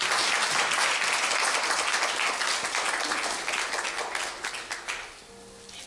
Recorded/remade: recorded